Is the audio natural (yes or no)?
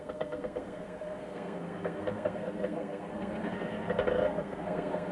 no